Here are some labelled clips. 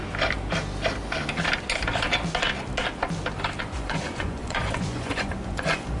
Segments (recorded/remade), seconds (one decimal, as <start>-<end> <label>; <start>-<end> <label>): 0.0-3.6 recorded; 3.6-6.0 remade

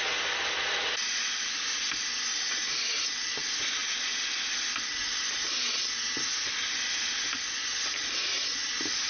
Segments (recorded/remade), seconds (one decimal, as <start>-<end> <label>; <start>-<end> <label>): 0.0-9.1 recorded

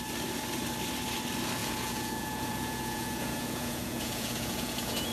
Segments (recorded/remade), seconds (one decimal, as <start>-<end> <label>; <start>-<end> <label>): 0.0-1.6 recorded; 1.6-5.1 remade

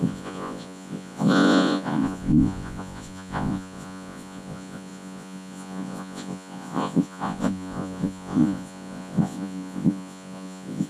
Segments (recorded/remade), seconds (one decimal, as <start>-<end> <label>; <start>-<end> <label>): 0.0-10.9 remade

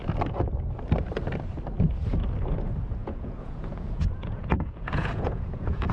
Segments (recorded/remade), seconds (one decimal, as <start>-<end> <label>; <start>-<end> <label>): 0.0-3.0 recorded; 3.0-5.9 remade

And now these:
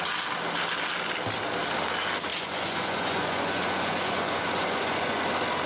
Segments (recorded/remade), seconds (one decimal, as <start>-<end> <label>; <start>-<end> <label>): 0.0-2.3 recorded; 2.3-5.2 remade; 5.2-5.7 recorded